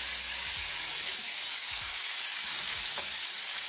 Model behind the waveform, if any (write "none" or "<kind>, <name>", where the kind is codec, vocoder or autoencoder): codec, DAC